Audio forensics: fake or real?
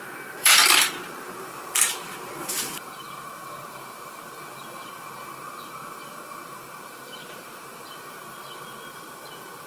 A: fake